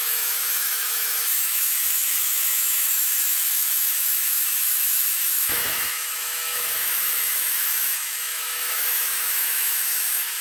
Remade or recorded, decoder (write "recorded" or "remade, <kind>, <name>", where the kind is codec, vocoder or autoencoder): remade, autoencoder, DAC-VAE